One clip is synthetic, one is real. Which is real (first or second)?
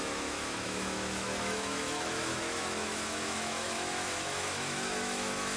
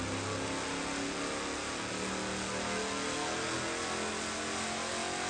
second